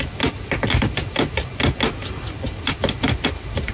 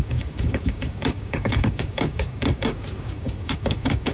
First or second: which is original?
first